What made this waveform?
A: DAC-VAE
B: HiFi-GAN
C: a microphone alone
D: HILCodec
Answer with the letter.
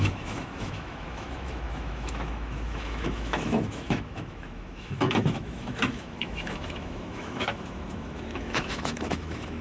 A